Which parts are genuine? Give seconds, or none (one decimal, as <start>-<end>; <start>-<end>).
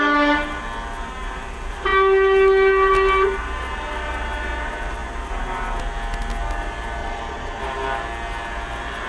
0.0-7.0; 7.6-9.1